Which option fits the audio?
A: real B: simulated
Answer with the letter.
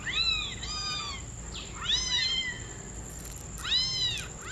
A